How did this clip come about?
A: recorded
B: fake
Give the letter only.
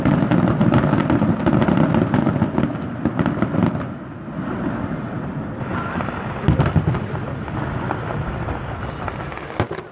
A